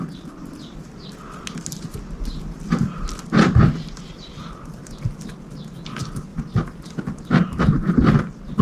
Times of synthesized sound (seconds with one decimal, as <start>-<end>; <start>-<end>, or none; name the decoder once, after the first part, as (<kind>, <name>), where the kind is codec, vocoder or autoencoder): none